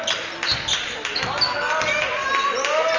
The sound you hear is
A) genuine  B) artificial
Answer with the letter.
A